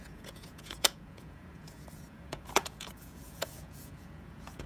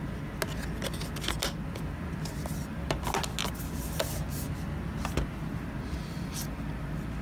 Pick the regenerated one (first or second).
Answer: first